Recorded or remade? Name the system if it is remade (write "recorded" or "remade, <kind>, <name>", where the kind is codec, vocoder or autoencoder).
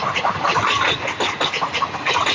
recorded